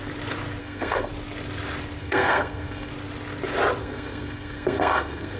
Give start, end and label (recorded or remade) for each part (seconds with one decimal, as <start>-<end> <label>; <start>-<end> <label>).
0.0-0.6 recorded; 0.6-1.1 remade; 1.1-2.0 recorded; 2.0-2.9 remade; 2.9-3.8 recorded; 3.8-5.4 remade